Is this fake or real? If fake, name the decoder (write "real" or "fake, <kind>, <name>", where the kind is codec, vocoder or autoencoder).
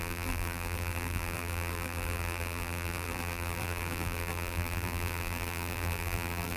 fake, vocoder, BigVGAN v2